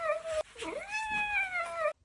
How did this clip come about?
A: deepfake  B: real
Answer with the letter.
B